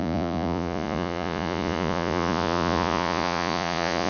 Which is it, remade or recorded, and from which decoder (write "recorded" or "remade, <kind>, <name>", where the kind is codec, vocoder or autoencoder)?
remade, vocoder, Vocos